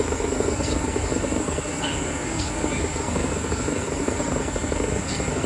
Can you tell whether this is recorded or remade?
remade